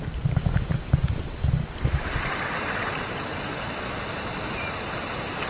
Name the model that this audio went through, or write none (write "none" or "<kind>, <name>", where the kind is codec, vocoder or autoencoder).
none